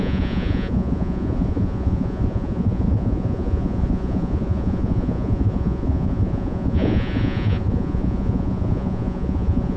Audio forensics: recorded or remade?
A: remade